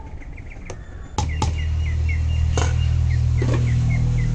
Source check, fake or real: real